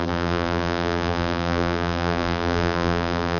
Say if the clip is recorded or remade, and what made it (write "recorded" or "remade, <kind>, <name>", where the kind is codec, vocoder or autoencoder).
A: remade, vocoder, BigVGAN v2